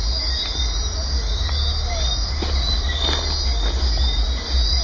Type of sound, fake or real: real